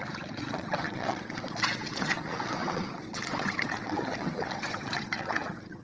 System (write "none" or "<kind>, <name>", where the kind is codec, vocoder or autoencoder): vocoder, WaveNeXt